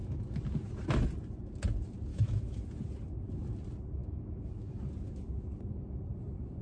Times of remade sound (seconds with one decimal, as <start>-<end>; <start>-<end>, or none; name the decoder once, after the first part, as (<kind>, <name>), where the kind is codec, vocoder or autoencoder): 2.1-2.6 (autoencoder, DAC-VAE); 4.0-4.8